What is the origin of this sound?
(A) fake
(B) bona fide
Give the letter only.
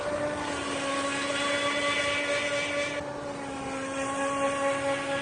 A